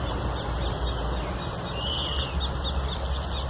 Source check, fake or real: real